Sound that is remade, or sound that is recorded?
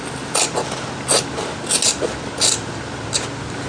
recorded